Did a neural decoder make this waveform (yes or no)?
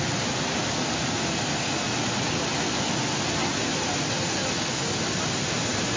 no